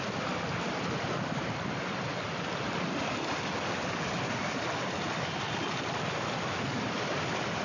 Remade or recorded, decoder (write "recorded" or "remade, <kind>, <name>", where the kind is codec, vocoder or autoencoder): recorded